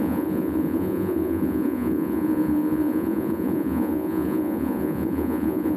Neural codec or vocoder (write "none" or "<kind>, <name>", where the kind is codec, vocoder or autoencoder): vocoder, Vocos